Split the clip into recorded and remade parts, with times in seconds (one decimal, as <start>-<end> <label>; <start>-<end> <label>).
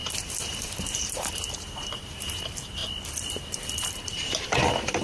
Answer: 0.0-2.8 remade; 2.8-3.3 recorded; 3.3-5.0 remade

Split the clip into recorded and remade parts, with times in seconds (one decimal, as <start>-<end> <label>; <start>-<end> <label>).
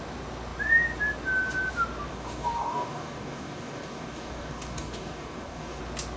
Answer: 0.0-2.1 recorded; 2.1-5.8 remade; 5.8-6.2 recorded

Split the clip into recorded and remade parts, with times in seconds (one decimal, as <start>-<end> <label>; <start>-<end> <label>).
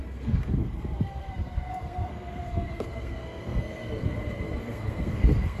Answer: 0.0-4.0 remade; 4.0-4.6 recorded; 4.6-5.6 remade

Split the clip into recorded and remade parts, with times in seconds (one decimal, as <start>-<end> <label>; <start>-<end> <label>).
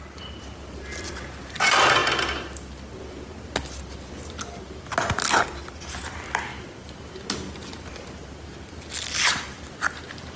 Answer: 0.0-10.4 recorded